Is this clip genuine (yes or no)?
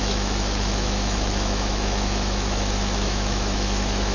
no